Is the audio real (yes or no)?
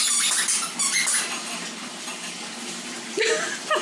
yes